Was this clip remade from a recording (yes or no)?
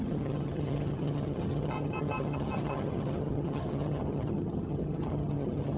yes